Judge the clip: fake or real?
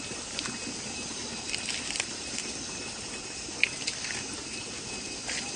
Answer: real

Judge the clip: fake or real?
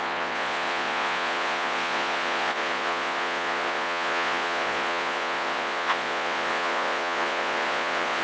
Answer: fake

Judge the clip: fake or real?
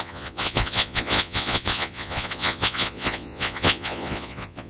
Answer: fake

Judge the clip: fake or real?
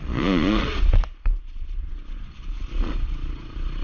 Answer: fake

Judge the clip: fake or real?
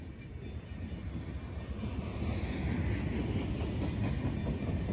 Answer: real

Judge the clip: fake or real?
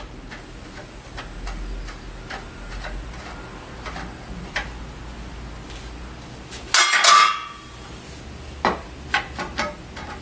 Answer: real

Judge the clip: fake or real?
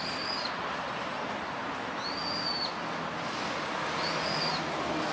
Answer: real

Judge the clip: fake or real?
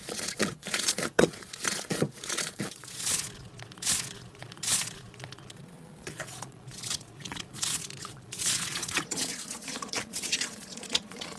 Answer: fake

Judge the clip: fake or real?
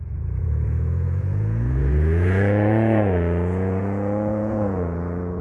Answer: fake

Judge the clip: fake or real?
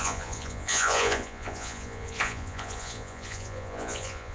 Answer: fake